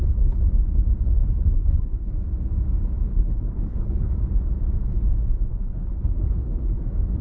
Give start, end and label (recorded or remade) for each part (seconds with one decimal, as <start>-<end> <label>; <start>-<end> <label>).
0.0-1.2 recorded; 1.2-2.1 remade; 2.1-3.1 recorded; 3.1-4.1 remade; 4.1-5.5 recorded; 5.5-6.8 remade; 6.8-7.2 recorded